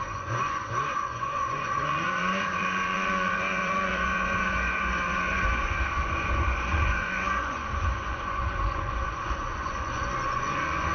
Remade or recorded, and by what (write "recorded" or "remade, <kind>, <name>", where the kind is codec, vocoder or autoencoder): remade, vocoder, Vocos